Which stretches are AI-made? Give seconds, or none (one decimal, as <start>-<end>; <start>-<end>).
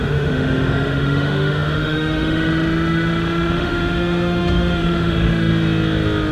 0.0-5.5